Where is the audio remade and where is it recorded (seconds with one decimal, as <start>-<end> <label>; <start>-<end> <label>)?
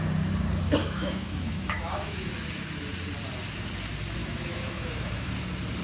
0.0-0.8 recorded; 0.8-2.3 remade; 2.3-4.2 recorded; 4.2-5.3 remade; 5.3-5.8 recorded